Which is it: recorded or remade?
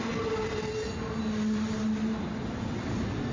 recorded